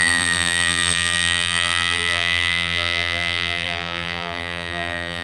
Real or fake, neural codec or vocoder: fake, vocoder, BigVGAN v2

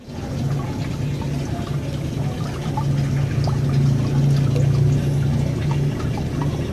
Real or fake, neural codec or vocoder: real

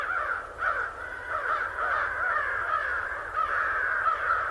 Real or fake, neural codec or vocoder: fake, vocoder, BigVGAN v2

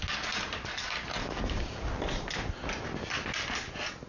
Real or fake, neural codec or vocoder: real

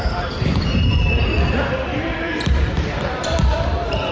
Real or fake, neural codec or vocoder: fake, vocoder, BigVGAN v2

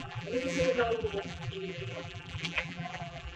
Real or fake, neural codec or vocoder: fake, vocoder, BigVGAN v2